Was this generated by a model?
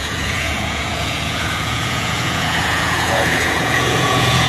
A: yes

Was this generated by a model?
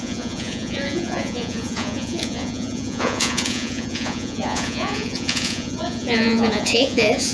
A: yes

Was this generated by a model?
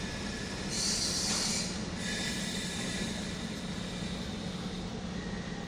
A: no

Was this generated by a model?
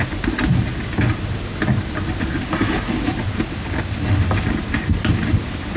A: no